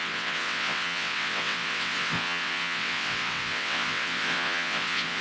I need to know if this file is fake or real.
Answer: fake